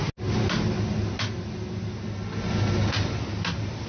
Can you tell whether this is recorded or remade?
recorded